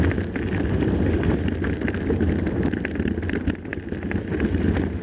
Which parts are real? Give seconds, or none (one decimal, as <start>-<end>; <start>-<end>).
0.0-5.0